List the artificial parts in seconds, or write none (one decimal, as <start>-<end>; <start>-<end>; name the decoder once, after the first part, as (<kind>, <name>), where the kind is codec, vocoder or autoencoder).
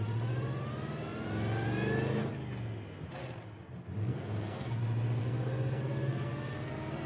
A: 4.0-4.8 (codec, SNAC); 5.2-7.1